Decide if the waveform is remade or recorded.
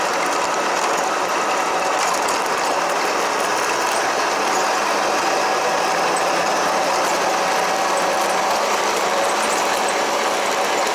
recorded